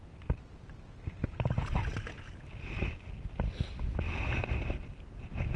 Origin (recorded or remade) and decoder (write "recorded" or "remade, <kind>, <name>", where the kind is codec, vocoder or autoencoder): recorded